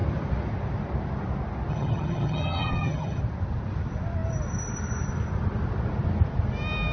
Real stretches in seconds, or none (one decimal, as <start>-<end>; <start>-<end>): 0.0-1.7; 3.2-6.9